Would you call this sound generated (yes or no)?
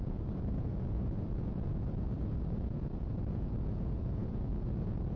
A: yes